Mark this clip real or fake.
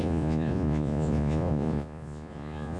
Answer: fake